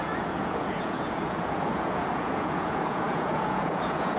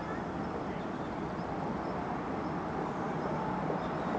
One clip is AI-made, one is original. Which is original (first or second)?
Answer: second